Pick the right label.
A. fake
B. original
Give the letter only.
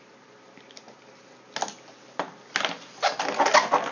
B